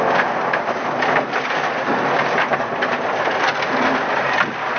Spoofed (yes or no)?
no